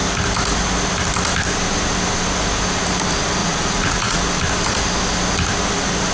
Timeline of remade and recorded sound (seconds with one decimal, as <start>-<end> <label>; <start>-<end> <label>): 0.0-3.4 recorded; 3.4-4.2 remade; 4.2-6.1 recorded